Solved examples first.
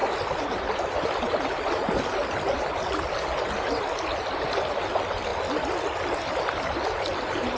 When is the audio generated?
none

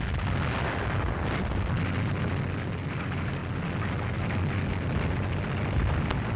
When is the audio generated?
none